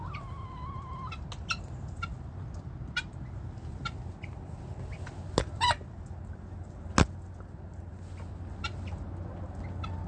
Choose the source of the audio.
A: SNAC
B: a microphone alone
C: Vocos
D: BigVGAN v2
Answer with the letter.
B